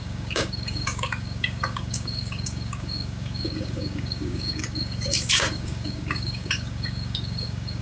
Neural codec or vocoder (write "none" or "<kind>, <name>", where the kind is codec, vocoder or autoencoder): codec, DAC